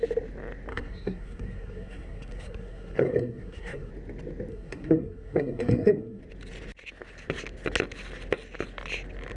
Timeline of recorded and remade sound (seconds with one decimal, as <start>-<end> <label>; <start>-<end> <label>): 0.0-0.7 recorded; 0.7-3.9 remade; 3.9-4.5 recorded; 4.5-6.2 remade; 6.2-9.4 recorded